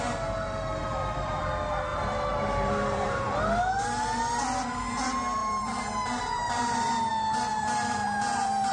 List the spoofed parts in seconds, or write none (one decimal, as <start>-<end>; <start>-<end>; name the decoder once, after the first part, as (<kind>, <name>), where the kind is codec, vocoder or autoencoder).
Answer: 0.8-1.4 (vocoder, BigVGAN v2); 1.9-3.2; 5.4-7.1; 7.5-8.7

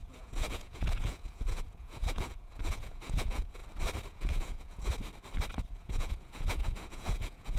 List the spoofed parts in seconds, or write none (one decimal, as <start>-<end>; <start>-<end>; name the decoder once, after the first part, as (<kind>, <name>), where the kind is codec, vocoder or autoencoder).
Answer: 0.0-3.6 (vocoder, Vocos); 4.1-4.9; 5.7-7.6

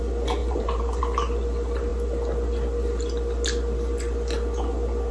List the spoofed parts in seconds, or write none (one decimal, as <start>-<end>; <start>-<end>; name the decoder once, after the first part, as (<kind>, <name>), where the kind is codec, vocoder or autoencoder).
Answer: 0.4-1.0 (vocoder, BigVGAN v2)

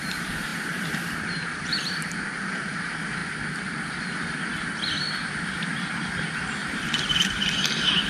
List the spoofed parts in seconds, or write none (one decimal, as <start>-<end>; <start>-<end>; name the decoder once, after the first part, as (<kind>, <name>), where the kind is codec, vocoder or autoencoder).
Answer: 0.0-3.2 (vocoder, BigVGAN v2); 4.0-4.5; 5.5-8.1

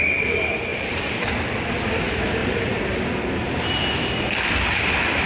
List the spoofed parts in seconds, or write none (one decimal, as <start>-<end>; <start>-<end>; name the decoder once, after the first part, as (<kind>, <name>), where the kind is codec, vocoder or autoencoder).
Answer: 0.7-1.3 (vocoder, BigVGAN v2); 2.4-3.6